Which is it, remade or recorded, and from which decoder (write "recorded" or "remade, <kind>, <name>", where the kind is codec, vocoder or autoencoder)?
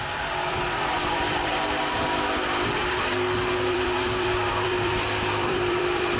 remade, vocoder, BigVGAN v2